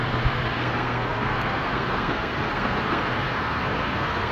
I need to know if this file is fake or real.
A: fake